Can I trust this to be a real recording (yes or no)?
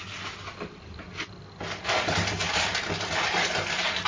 yes